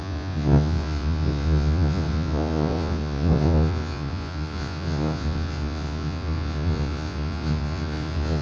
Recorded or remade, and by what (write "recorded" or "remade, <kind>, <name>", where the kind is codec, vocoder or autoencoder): remade, vocoder, Vocos